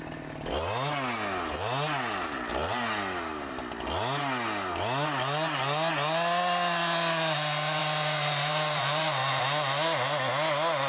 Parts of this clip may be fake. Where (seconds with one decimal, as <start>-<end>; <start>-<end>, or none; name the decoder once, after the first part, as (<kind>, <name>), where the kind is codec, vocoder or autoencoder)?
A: 7.8-9.4 (vocoder, BigVGAN v2)